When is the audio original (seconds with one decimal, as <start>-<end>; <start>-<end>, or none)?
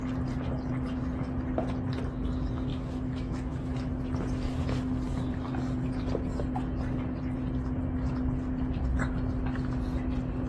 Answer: 0.0-2.7; 3.9-10.5